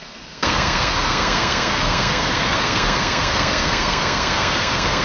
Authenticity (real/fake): fake